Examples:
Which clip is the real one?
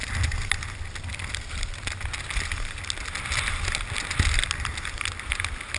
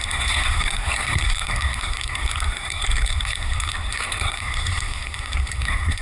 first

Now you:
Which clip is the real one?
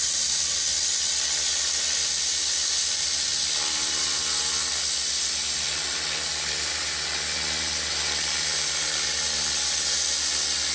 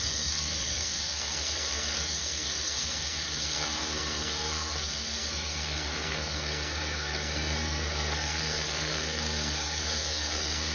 first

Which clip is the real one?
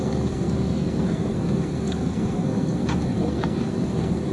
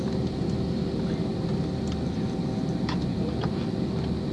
second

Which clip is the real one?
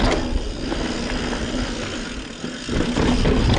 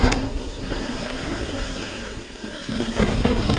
first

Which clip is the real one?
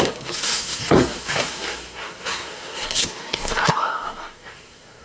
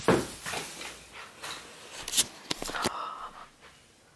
second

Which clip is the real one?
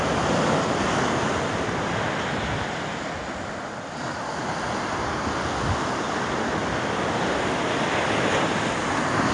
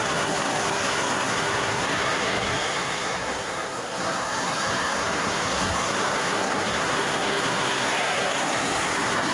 first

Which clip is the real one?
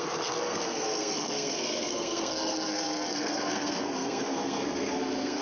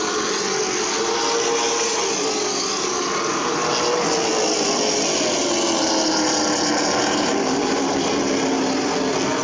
second